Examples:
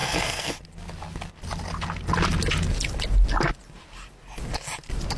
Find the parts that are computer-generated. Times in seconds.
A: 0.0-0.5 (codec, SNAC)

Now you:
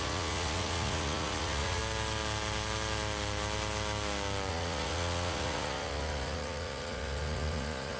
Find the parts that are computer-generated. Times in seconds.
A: 0.0-1.8 (vocoder, Vocos); 4.5-8.0